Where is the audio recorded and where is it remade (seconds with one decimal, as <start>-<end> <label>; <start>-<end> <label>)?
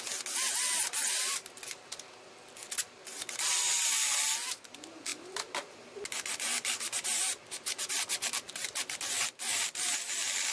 0.0-10.5 recorded